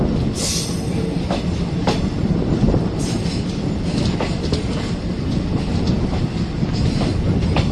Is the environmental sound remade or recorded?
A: recorded